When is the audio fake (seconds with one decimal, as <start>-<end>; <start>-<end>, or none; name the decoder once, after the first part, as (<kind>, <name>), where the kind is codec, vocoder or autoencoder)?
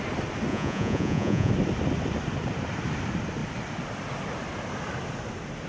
0.5-1.5 (vocoder, Vocos)